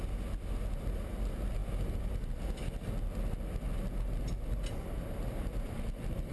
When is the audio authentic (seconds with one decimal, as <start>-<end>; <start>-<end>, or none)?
0.0-6.3